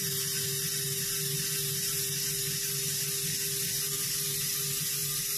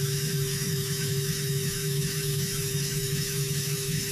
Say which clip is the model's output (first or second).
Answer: second